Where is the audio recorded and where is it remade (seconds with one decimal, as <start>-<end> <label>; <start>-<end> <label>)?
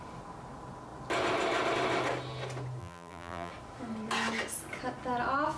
0.0-2.8 recorded; 2.8-3.5 remade; 3.5-5.6 recorded